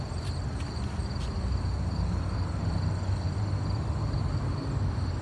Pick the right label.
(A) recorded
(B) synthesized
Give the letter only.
B